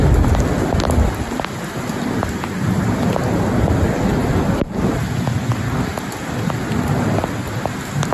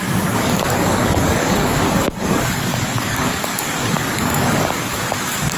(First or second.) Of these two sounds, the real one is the first